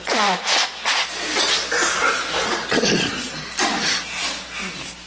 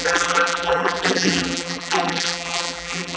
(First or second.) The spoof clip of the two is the second